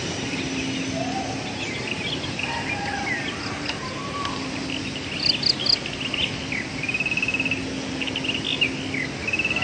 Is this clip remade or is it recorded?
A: recorded